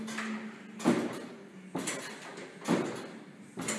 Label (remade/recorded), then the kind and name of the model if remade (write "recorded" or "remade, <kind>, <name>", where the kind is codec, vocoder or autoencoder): recorded